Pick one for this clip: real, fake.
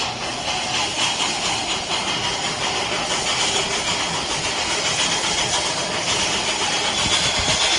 real